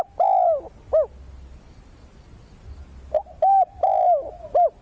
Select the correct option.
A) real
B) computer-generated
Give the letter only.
A